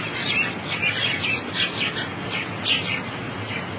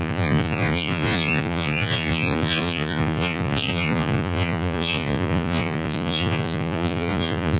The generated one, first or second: second